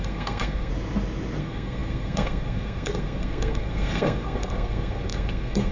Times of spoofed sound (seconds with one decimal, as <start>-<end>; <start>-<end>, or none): 0.0-0.7; 1.4-5.7

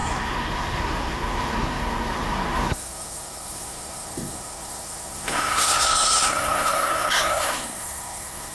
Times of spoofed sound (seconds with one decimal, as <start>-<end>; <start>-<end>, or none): 0.0-8.5